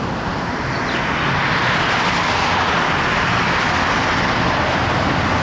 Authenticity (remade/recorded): recorded